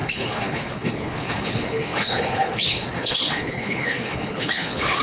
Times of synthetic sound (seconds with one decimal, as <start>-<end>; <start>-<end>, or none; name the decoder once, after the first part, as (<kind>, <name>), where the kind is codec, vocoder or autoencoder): 0.0-5.0 (codec, HILCodec)